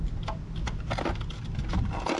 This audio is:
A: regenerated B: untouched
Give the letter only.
B